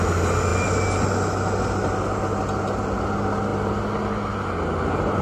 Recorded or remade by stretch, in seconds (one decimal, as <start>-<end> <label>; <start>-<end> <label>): 0.0-5.2 recorded